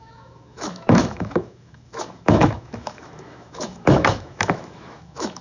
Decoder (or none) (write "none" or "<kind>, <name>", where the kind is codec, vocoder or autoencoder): autoencoder, DAC-VAE